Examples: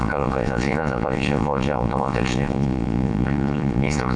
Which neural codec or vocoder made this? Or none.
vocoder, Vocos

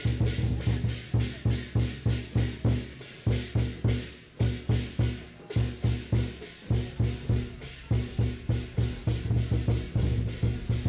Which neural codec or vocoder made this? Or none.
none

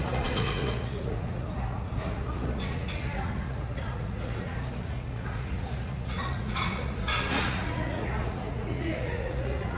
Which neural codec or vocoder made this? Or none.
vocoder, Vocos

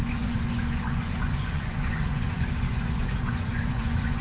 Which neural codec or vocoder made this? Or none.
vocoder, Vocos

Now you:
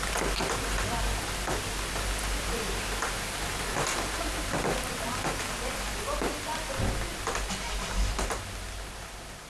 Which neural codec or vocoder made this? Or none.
none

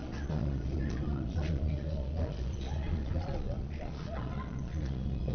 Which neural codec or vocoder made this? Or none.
vocoder, Vocos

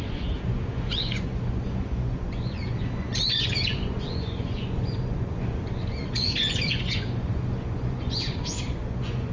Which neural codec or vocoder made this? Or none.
vocoder, Vocos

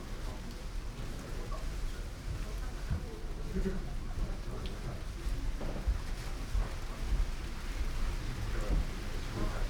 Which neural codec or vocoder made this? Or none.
none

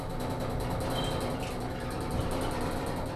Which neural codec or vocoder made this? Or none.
none